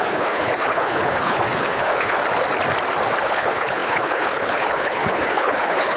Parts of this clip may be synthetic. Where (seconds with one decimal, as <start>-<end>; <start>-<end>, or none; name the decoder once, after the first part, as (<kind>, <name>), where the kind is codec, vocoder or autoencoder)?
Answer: 0.0-2.2 (codec, HILCodec); 3.2-6.0